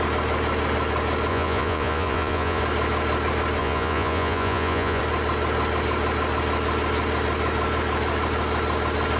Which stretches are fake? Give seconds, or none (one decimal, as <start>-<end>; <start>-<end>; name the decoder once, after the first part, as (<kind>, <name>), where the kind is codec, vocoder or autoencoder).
1.3-2.6 (vocoder, Vocos); 3.6-5.0